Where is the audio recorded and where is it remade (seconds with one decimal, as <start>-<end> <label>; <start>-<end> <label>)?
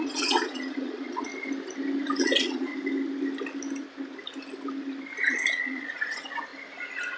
0.0-1.3 remade; 1.3-2.2 recorded; 2.2-2.7 remade; 2.7-5.2 recorded; 5.2-6.5 remade; 6.5-7.2 recorded